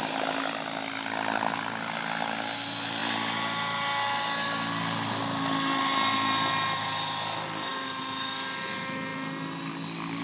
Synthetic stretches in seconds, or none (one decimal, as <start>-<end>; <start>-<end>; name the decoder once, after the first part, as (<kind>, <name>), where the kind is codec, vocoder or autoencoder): none